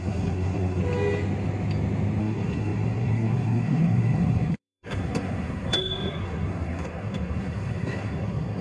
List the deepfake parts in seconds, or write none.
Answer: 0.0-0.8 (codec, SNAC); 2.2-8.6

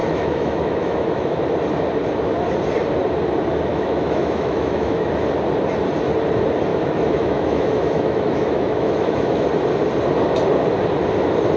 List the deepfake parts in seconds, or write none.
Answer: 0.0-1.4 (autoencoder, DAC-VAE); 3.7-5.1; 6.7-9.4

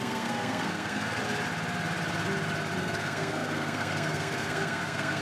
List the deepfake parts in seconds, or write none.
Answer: 0.0-1.2 (codec, SNAC); 2.8-5.2